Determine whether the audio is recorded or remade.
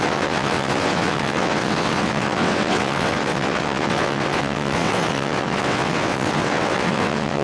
remade